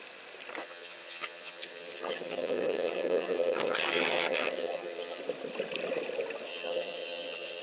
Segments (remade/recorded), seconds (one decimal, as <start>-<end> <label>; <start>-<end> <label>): 0.0-0.6 recorded; 0.6-5.2 remade; 5.2-6.5 recorded; 6.5-7.6 remade

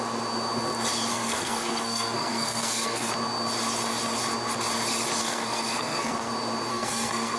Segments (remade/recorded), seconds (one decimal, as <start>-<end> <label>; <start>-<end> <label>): 0.0-1.1 recorded; 1.1-3.1 remade; 3.1-5.2 recorded; 5.2-6.3 remade; 6.3-6.7 recorded; 6.7-7.4 remade

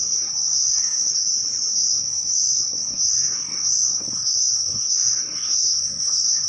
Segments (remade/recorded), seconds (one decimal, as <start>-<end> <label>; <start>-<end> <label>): 0.0-1.1 remade; 1.1-1.7 recorded; 1.7-6.5 remade

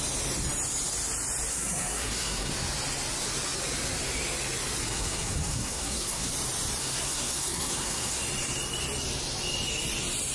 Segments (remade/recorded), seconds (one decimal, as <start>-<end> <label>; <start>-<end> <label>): 0.0-1.5 recorded; 1.5-2.5 remade; 2.5-4.8 recorded; 4.8-6.3 remade; 6.3-6.8 recorded; 6.8-8.2 remade; 8.2-10.3 recorded

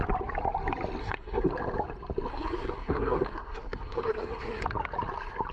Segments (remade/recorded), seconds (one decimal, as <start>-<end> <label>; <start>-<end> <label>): 0.0-1.0 recorded; 1.0-1.5 remade; 1.5-2.3 recorded; 2.3-4.6 remade; 4.6-5.5 recorded

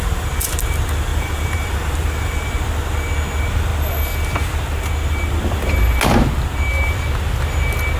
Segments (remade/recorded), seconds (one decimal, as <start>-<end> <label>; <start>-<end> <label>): 0.0-1.1 recorded; 1.1-2.5 remade; 2.5-8.0 recorded

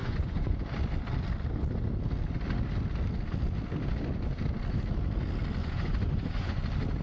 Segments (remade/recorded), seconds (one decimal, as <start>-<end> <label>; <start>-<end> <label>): 0.0-0.6 remade; 0.6-5.6 recorded; 5.6-6.6 remade; 6.6-7.0 recorded